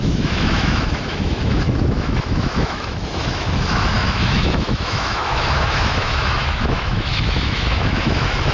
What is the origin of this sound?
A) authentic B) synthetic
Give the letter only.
B